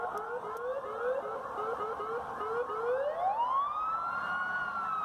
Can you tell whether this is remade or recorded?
recorded